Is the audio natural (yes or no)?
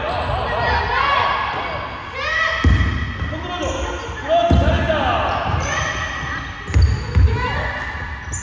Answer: yes